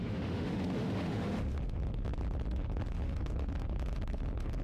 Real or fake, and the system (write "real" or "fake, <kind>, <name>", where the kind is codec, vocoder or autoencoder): fake, autoencoder, DAC-VAE